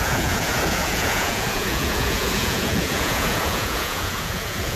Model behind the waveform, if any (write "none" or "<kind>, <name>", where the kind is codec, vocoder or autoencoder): vocoder, Vocos